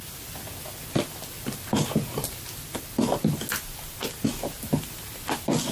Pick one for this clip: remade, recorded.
recorded